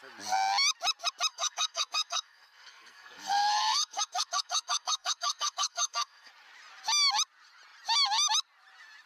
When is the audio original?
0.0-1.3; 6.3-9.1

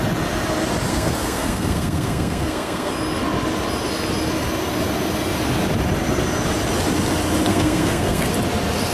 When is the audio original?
0.0-0.9; 2.9-7.5; 8.3-8.9

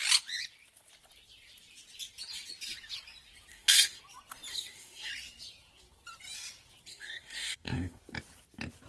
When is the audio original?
0.0-3.5; 4.0-4.5; 5.1-6.9; 8.0-8.9

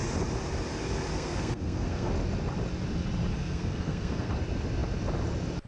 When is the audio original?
0.0-1.1; 2.1-3.3; 4.3-5.7